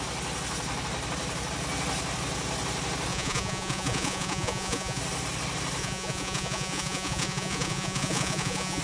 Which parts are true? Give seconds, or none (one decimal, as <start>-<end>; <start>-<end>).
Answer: 0.0-3.1; 5.0-5.8